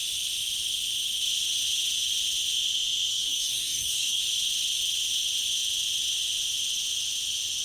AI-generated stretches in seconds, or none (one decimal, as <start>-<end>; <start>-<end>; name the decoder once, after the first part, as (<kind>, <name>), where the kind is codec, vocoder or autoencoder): 3.1-4.2 (codec, DAC)